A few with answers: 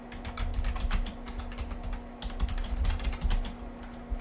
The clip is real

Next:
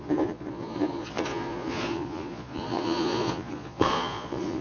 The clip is fake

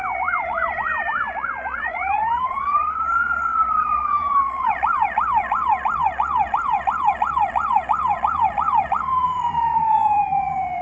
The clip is fake